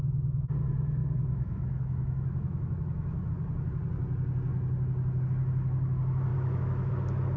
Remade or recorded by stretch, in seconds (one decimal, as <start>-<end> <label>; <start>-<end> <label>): 0.0-1.0 recorded; 1.0-3.3 remade; 3.3-6.3 recorded; 6.3-6.9 remade; 6.9-7.4 recorded